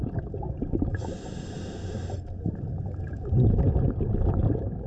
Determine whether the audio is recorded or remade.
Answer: recorded